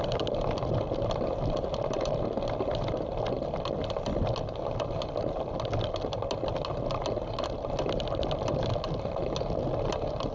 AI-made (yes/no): no